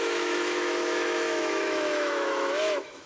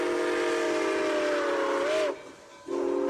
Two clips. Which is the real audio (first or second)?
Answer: second